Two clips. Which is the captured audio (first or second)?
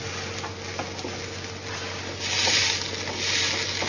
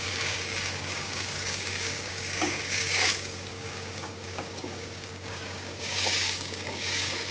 first